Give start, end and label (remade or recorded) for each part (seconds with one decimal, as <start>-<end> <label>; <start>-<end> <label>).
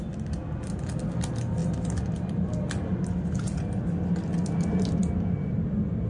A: 0.0-6.1 recorded